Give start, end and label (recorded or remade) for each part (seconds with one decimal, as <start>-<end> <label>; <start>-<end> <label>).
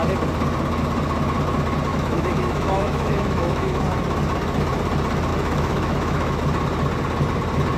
0.0-1.9 recorded; 1.9-3.8 remade; 3.8-5.3 recorded; 5.3-6.4 remade; 6.4-7.8 recorded